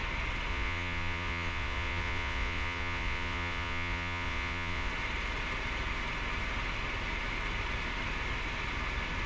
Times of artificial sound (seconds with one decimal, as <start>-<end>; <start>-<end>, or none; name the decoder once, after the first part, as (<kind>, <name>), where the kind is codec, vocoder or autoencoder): 0.5-4.9 (vocoder, Vocos)